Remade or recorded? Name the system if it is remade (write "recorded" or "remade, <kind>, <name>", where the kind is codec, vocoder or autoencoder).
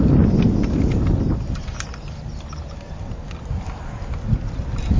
recorded